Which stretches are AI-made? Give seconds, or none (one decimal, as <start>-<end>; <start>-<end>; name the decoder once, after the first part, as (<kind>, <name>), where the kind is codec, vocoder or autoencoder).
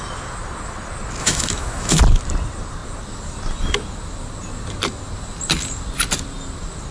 1.2-2.0 (autoencoder, DAC-VAE)